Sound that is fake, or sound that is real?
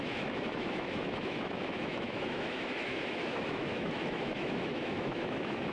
fake